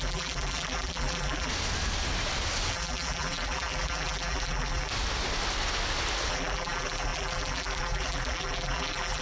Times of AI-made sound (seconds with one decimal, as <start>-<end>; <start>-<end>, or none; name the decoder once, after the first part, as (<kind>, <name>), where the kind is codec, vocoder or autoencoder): 0.0-1.5 (vocoder, BigVGAN v2); 2.7-4.9; 6.3-9.2